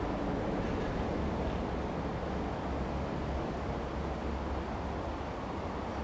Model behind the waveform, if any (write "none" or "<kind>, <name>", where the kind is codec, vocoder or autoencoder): none